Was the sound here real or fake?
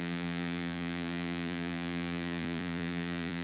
fake